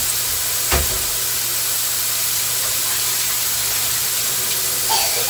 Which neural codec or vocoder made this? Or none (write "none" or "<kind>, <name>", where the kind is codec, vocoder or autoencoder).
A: none